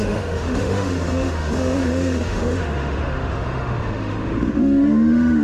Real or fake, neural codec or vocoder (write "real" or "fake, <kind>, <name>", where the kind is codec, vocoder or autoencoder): fake, autoencoder, DAC-VAE